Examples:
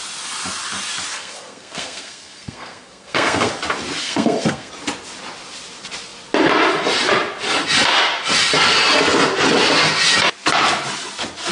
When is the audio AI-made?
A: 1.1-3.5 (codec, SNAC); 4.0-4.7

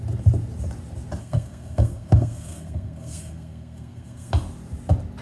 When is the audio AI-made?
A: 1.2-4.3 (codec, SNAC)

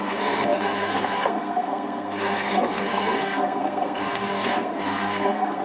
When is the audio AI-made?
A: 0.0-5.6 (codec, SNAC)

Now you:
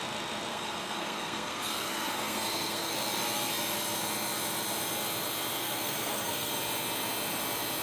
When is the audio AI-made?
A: 0.5-2.9 (codec, SNAC); 5.6-6.5

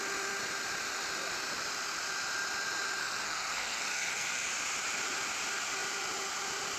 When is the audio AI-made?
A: 3.0-4.5 (codec, SNAC)